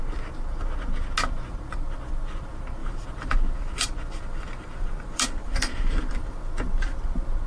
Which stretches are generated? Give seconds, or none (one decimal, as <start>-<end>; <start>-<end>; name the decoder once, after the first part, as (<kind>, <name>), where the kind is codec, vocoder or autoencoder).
2.8-6.4 (vocoder, BigVGAN v2)